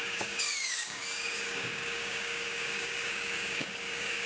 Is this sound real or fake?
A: fake